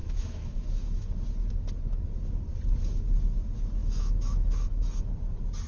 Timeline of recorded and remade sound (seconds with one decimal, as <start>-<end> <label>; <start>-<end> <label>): 0.0-1.1 remade; 1.1-3.8 recorded; 3.8-5.2 remade; 5.2-5.7 recorded